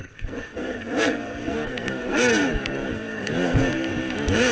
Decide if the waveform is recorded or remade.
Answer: remade